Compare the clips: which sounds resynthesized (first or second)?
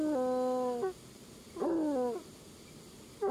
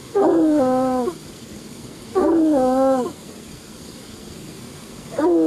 second